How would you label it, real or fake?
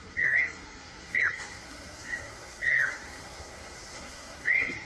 fake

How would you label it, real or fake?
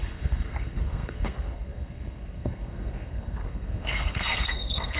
fake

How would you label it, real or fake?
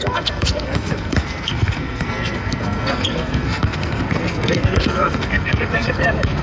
fake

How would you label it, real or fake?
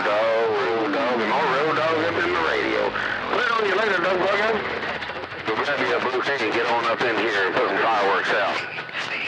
real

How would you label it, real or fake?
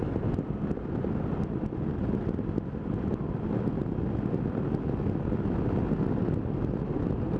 real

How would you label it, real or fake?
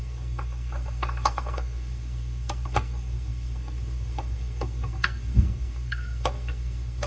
fake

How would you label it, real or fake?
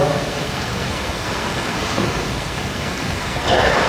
fake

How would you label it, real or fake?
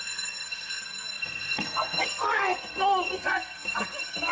fake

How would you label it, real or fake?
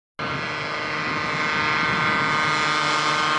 real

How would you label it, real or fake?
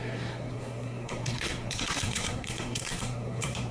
fake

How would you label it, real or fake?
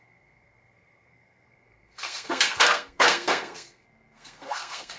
fake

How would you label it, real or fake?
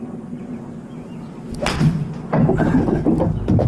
real